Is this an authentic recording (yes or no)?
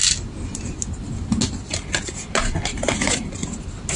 yes